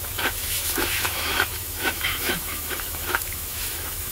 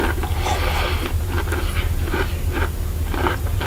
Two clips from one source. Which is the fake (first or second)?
first